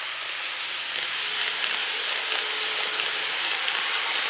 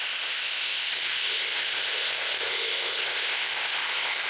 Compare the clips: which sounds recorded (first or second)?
first